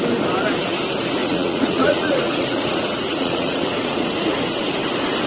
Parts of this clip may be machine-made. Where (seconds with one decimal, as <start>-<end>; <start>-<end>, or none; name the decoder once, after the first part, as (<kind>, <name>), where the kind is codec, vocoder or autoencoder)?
1.2-4.4 (vocoder, Vocos)